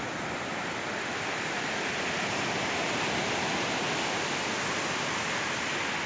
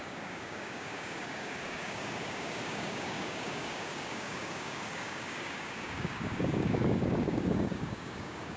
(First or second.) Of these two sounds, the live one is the first